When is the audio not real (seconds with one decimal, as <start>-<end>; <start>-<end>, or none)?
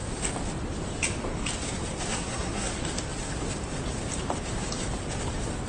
2.1-2.7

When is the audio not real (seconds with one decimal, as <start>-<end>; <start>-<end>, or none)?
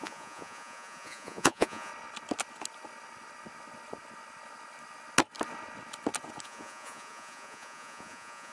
0.0-1.9; 6.4-8.5